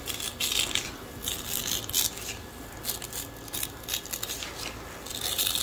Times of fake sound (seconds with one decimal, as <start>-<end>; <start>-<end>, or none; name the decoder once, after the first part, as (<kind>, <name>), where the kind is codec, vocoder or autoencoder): none